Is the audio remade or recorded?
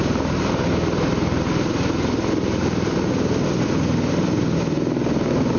recorded